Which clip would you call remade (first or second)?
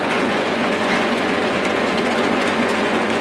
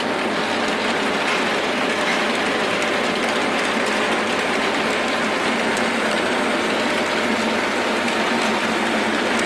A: first